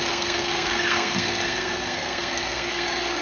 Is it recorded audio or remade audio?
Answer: remade